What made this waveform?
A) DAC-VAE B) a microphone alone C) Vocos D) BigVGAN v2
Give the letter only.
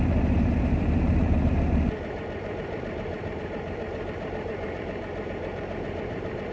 D